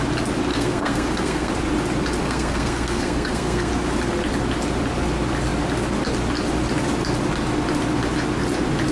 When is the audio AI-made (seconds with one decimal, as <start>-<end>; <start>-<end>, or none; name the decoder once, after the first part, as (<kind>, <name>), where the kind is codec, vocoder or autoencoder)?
0.5-1.5 (codec, SNAC); 2.2-3.7